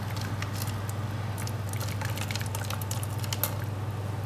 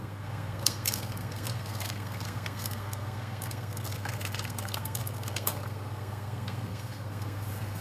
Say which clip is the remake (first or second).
second